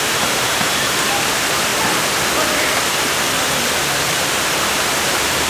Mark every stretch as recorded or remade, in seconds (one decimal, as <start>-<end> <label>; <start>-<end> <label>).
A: 0.0-1.7 remade; 1.7-4.0 recorded; 4.0-5.5 remade